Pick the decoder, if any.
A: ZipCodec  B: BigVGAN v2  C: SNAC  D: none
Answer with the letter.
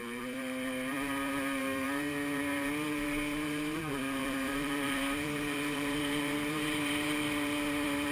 B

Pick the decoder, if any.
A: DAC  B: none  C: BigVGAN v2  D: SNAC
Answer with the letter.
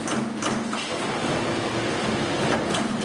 B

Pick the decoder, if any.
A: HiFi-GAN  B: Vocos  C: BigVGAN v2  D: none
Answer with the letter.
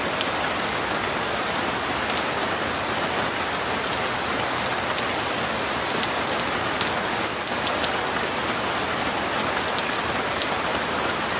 D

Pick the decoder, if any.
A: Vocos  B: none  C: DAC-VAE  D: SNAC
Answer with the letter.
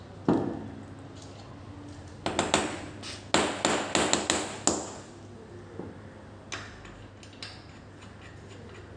B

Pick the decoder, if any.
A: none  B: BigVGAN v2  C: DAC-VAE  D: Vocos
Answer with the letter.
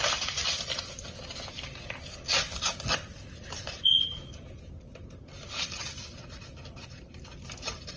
A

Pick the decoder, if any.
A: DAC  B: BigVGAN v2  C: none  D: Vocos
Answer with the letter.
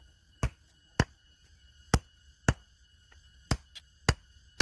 C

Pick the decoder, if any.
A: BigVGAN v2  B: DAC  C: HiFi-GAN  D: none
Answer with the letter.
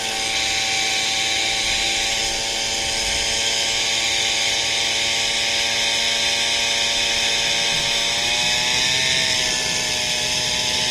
D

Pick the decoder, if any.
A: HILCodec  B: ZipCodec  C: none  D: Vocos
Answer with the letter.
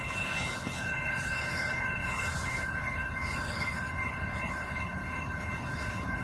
A